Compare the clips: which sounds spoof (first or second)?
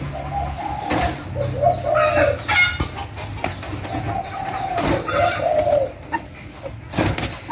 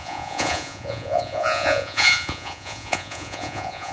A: second